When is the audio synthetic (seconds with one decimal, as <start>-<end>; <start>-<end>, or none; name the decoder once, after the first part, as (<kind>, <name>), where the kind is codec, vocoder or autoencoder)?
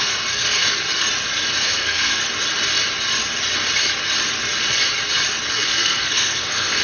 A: 0.0-0.6 (codec, SNAC); 1.6-2.2; 5.5-6.8